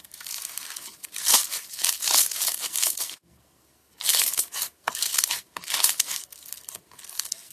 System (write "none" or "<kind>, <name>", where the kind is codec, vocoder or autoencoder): codec, SNAC